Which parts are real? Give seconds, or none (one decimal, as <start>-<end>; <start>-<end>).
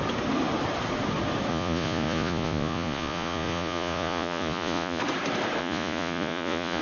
0.0-1.5; 5.0-5.6